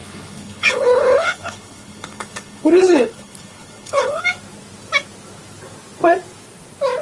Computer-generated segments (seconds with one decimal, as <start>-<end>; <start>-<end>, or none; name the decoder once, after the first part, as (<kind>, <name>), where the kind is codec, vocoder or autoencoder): 0.0-4.2 (codec, HILCodec)